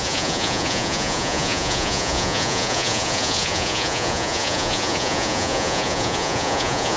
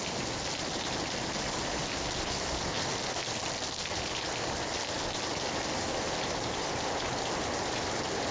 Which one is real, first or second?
second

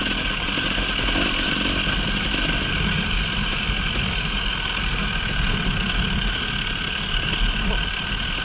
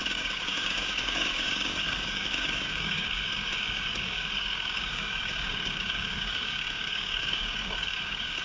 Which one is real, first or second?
first